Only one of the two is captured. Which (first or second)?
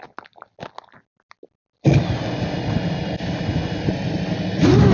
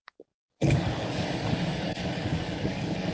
first